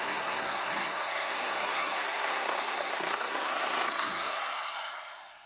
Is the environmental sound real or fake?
fake